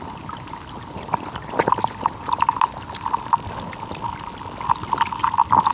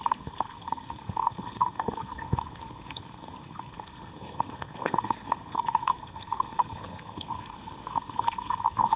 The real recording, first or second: first